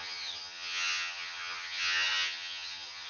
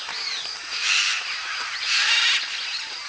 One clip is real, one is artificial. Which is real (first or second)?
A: second